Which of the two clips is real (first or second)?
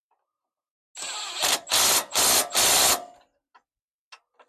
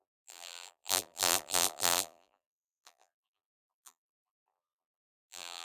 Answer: first